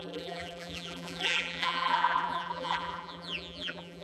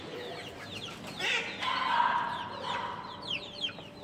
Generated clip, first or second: first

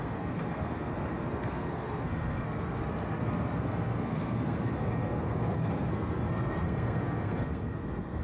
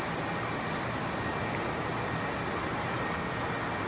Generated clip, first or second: first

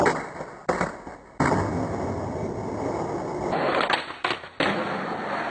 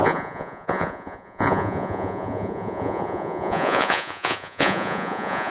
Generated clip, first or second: second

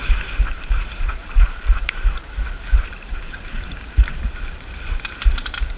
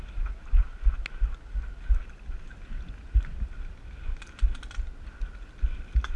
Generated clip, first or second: first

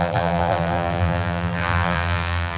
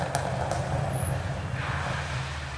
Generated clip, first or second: first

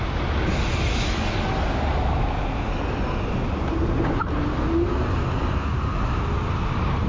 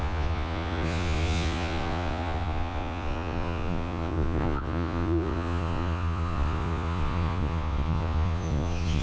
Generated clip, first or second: second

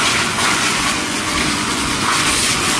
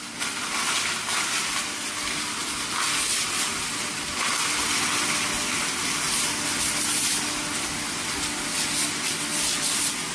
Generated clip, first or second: first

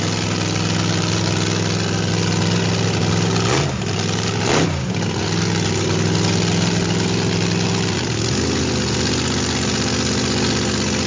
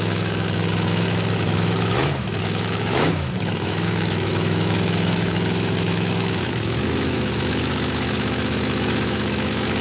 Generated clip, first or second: second